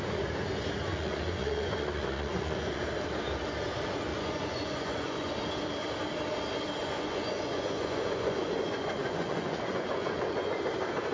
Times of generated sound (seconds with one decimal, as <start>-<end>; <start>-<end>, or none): 0.9-2.8; 4.1-5.3; 6.8-10.6